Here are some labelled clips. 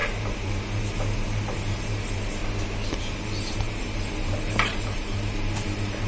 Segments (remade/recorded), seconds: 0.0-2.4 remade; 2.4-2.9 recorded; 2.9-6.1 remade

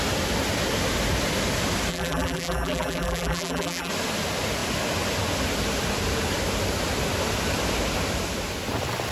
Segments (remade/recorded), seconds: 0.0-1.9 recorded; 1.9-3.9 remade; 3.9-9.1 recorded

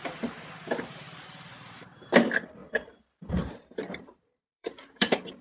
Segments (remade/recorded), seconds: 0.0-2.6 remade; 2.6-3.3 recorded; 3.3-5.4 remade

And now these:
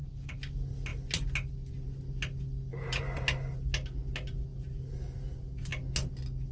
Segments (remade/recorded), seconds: 0.0-2.7 recorded; 2.7-3.2 remade; 3.2-4.5 recorded; 4.5-5.0 remade; 5.0-6.5 recorded